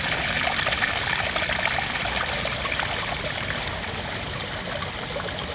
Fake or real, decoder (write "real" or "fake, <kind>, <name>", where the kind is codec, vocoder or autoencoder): real